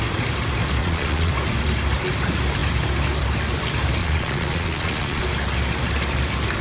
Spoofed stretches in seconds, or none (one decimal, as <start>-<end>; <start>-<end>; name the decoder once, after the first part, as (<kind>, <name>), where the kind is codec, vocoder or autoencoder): 0.8-1.3 (vocoder, Vocos); 4.0-5.2